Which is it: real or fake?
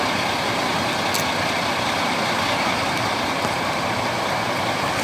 fake